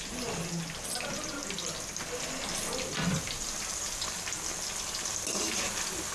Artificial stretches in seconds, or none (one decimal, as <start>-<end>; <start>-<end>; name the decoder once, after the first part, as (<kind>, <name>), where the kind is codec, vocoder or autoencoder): none